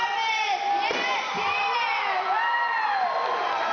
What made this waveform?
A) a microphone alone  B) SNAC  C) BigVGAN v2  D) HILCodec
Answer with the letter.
A